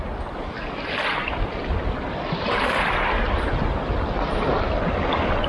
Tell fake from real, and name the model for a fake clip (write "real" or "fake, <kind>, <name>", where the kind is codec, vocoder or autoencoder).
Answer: real